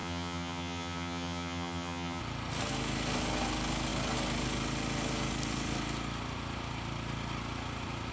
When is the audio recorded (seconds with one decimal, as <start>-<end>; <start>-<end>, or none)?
2.2-8.1